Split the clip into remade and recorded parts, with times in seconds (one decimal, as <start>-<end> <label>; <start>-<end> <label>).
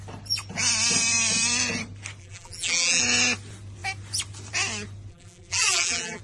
0.0-2.2 recorded; 2.2-3.0 remade; 3.0-5.1 recorded; 5.1-6.2 remade